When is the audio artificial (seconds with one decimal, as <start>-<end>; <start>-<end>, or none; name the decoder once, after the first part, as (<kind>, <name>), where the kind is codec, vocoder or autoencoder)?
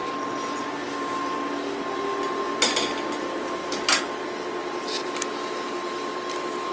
none